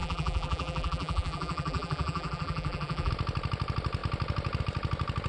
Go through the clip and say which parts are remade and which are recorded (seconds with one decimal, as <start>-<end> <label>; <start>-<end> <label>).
0.0-3.1 remade; 3.1-5.3 recorded

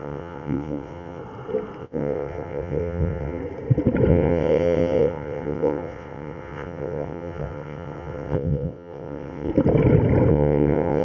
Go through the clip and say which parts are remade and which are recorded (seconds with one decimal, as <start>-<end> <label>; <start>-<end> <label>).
0.0-1.2 remade; 1.2-1.8 recorded; 1.8-3.4 remade; 3.4-4.1 recorded; 4.1-9.5 remade; 9.5-10.3 recorded; 10.3-11.0 remade